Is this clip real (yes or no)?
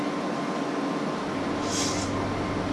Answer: yes